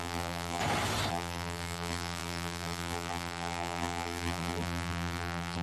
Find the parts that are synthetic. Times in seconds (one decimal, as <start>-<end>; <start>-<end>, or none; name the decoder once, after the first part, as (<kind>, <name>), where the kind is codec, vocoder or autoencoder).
0.0-0.6 (vocoder, BigVGAN v2); 1.1-5.6